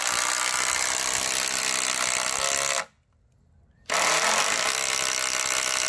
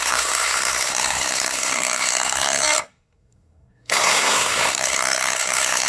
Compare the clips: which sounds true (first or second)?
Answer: first